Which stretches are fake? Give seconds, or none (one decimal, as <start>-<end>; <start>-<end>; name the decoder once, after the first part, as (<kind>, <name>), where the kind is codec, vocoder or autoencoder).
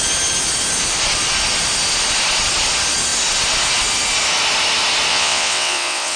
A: 5.1-6.2 (vocoder, WaveNeXt)